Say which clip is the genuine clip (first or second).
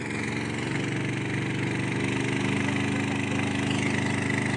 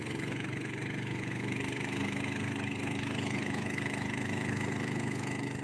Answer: first